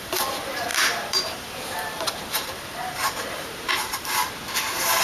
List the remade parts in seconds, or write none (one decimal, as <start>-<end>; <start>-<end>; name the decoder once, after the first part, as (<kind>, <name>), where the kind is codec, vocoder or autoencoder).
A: 0.0-4.2 (vocoder, BigVGAN v2)